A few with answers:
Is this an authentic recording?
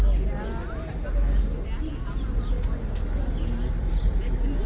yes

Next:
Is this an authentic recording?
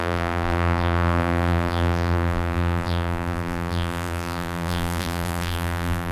no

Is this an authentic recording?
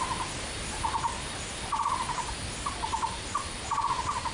yes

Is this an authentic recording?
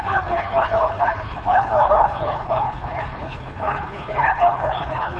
no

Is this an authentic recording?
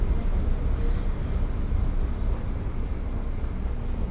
yes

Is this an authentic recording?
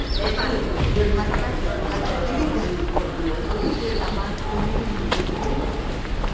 yes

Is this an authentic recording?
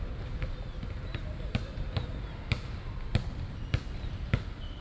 yes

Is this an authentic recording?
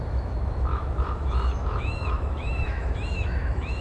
no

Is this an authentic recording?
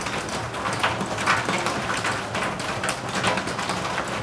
yes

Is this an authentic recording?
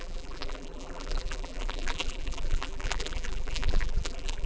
no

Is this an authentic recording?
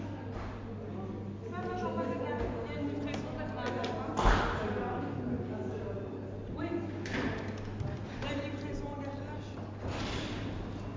yes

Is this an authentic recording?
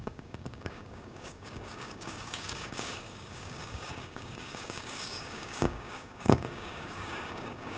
no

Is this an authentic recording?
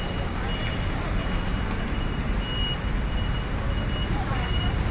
yes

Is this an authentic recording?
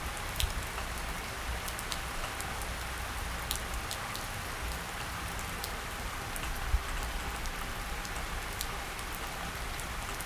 yes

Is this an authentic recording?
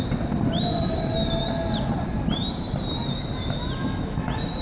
yes